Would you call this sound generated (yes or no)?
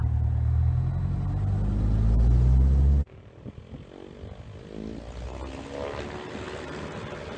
no